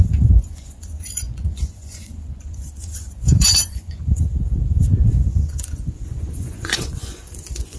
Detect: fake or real fake